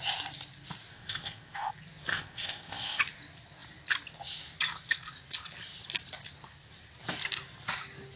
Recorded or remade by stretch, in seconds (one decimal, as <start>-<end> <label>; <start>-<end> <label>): 0.0-0.9 recorded; 0.9-1.7 remade; 1.7-2.1 recorded; 2.1-3.0 remade; 3.0-8.2 recorded